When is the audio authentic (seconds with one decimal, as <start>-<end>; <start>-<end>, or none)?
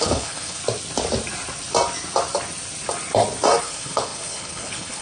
0.6-3.6